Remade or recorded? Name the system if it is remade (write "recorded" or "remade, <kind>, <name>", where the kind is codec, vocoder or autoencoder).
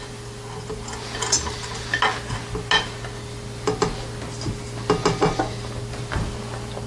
recorded